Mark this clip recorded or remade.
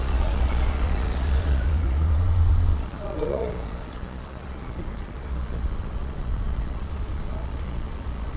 remade